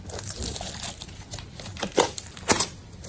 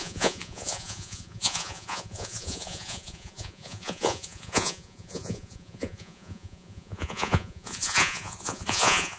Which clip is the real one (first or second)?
first